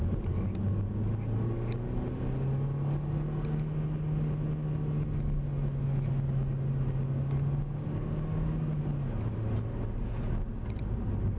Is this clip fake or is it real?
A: real